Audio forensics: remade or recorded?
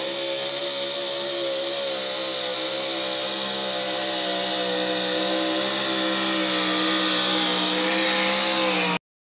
recorded